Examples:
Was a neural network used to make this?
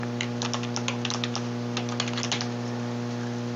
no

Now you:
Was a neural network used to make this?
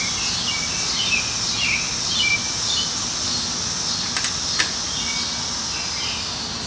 no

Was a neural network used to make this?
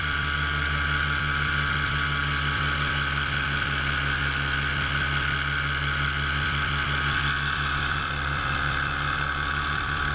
yes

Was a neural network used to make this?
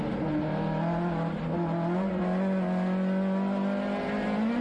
no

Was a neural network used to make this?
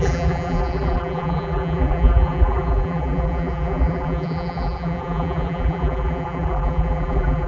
yes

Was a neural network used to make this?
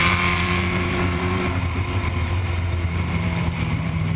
yes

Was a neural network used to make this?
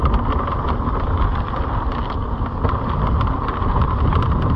no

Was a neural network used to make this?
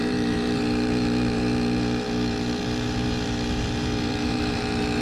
yes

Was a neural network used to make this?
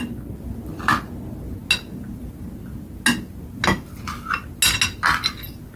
no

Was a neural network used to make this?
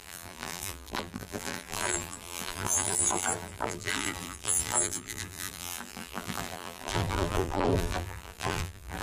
yes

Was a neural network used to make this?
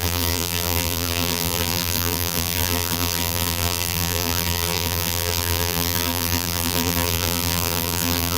yes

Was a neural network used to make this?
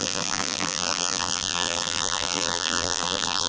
yes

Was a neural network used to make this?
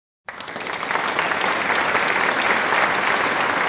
no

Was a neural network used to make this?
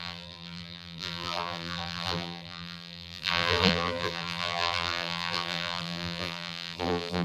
yes